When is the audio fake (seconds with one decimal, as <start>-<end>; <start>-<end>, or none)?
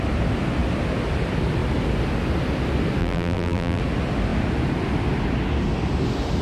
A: 3.0-3.8